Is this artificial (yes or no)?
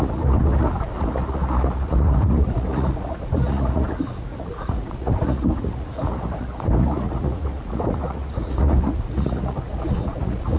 yes